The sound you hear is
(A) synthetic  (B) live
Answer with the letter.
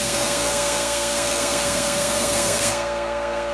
A